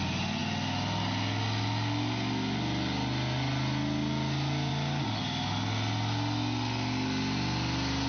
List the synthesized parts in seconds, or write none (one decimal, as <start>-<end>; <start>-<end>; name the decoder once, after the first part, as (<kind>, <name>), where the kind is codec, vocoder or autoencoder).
none